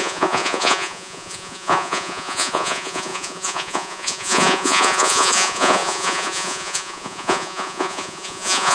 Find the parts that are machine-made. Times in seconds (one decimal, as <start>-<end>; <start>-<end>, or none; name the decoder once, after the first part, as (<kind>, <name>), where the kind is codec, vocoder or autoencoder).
0.0-8.7 (vocoder, Vocos)